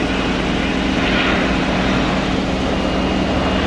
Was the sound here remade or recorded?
recorded